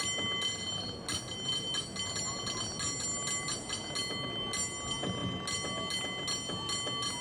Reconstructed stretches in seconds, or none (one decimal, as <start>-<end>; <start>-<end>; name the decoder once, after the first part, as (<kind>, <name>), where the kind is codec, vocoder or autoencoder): none